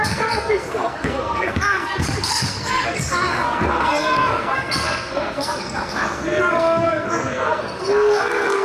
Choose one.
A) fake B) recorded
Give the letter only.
A